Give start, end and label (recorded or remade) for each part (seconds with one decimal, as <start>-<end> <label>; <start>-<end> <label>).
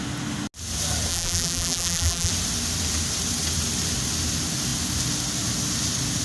0.0-1.1 recorded; 1.1-2.3 remade; 2.3-6.2 recorded